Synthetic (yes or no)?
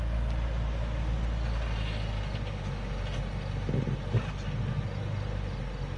no